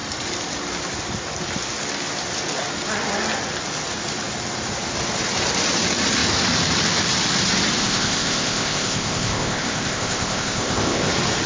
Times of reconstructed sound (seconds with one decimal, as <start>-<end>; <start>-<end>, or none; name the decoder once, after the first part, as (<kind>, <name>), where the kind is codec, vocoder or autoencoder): 7.8-11.1 (codec, ZipCodec)